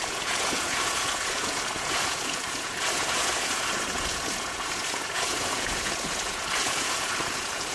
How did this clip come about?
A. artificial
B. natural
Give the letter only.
A